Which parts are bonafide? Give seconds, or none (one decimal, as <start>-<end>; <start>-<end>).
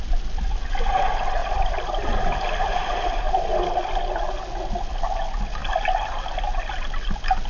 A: 0.0-1.4; 3.2-7.5